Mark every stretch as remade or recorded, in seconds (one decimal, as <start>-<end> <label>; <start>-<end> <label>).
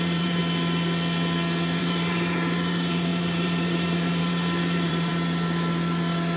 0.0-0.4 remade; 0.4-1.8 recorded; 1.8-5.1 remade; 5.1-6.4 recorded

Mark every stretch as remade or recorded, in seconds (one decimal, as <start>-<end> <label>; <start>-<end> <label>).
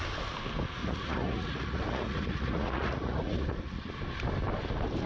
0.0-0.8 recorded; 0.8-3.9 remade; 3.9-5.1 recorded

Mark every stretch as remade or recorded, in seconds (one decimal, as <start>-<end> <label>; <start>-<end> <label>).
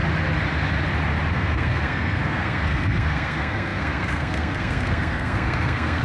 0.0-1.3 recorded; 1.3-6.0 remade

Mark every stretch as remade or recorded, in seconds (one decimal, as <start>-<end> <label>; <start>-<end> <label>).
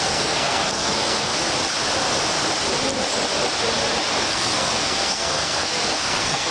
0.0-1.3 remade; 1.3-4.2 recorded; 4.2-6.5 remade